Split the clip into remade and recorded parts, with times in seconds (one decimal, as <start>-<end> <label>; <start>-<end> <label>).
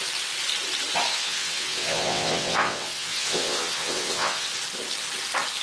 0.0-1.1 recorded; 1.1-4.5 remade; 4.5-5.6 recorded